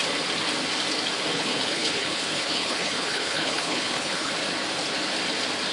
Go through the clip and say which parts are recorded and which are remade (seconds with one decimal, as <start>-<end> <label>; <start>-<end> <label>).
0.0-1.3 recorded; 1.3-4.3 remade; 4.3-5.7 recorded